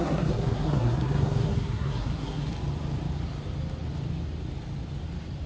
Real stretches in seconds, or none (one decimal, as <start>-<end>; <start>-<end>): 2.5-5.5